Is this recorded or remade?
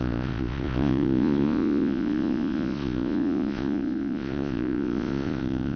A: remade